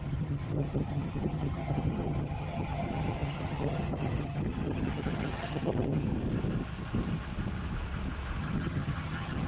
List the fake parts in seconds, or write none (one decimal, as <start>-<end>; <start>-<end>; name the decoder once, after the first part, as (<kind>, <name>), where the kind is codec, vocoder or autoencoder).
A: 0.0-6.1 (vocoder, HiFi-GAN); 8.4-9.5